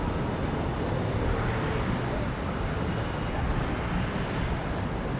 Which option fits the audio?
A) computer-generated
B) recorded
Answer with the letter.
B